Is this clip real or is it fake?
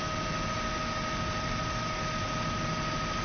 real